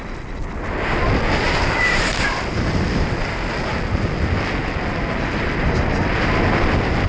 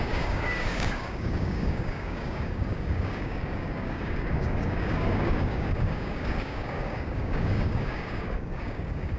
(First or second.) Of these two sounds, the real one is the first